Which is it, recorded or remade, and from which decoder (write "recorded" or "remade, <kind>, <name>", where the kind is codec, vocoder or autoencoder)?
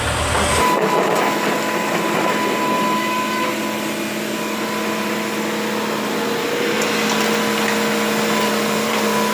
recorded